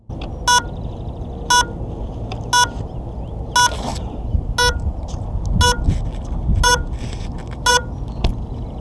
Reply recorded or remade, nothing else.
recorded